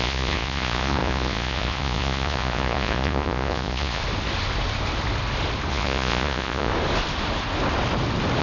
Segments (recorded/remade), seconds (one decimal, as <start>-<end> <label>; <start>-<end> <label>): 0.0-4.0 remade; 4.0-5.7 recorded; 5.7-6.7 remade; 6.7-8.4 recorded